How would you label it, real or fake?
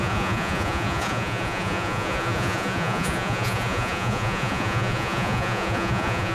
fake